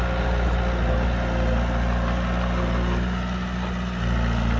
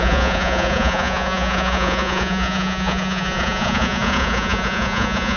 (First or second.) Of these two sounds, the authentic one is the first